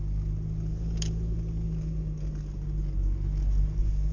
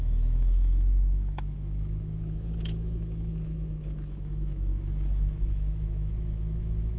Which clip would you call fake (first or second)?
second